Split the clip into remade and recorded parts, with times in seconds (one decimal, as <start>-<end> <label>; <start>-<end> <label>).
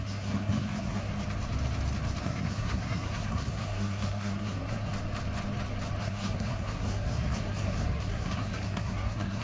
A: 0.0-1.1 remade; 1.1-2.2 recorded; 2.2-4.9 remade; 4.9-6.0 recorded; 6.0-9.4 remade